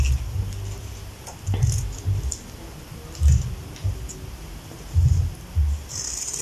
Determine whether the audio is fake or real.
real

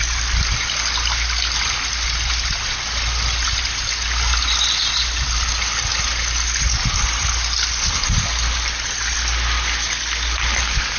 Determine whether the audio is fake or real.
real